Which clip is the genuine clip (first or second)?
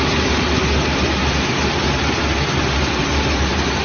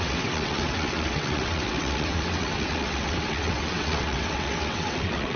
first